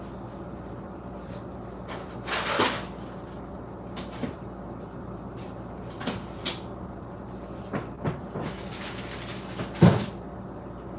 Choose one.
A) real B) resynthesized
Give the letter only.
A